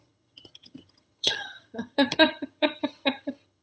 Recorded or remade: remade